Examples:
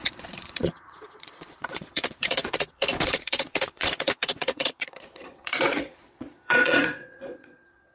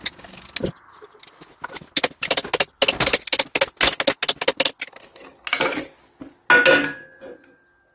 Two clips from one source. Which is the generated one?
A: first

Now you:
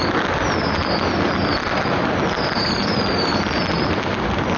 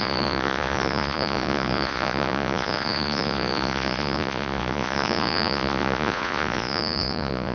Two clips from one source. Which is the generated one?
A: second